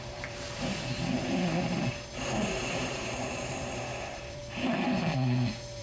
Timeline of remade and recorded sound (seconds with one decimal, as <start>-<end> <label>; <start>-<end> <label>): 0.0-4.4 remade; 4.4-5.8 recorded